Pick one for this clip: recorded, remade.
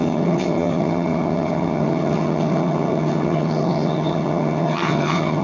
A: remade